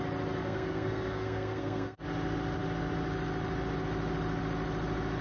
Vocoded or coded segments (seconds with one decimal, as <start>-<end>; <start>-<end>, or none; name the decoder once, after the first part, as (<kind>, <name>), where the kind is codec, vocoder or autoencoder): 0.4-2.0 (codec, SNAC)